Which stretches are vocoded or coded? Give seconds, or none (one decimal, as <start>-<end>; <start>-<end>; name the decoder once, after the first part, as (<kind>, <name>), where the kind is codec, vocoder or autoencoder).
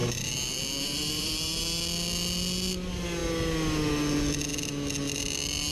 0.0-1.6 (vocoder, BigVGAN v2)